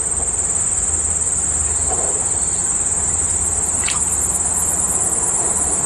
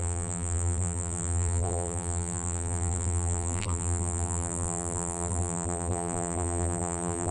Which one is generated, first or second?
second